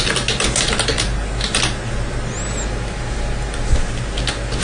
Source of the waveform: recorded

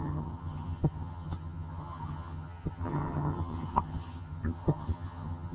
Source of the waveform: remade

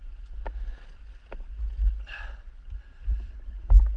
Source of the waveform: recorded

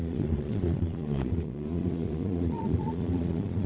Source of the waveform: remade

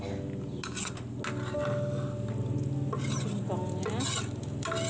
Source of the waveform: recorded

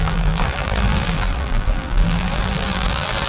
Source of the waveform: remade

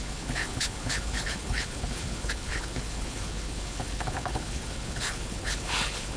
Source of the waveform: remade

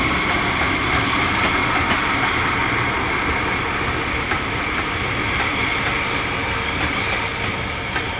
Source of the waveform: recorded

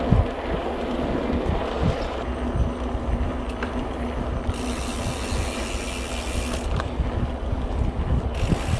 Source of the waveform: recorded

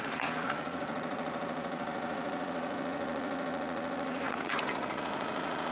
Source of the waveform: remade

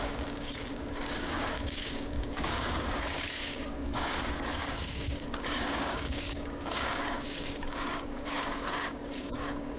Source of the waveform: remade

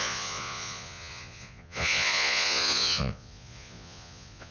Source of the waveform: remade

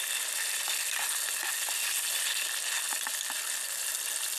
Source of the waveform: recorded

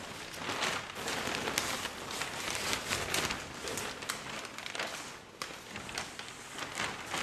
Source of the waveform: recorded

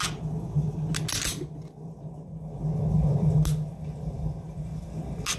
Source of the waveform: recorded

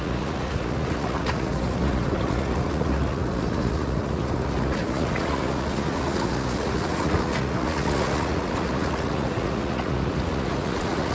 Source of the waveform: remade